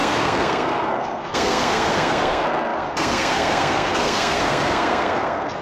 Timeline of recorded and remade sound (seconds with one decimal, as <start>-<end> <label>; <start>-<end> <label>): 0.0-5.6 remade